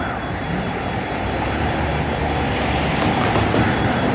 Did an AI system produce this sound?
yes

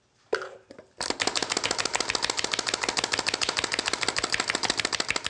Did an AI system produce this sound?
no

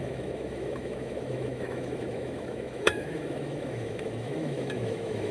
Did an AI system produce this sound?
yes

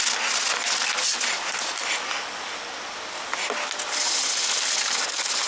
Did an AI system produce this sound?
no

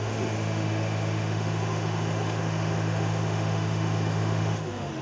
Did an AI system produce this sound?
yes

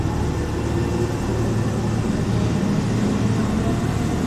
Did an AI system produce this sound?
no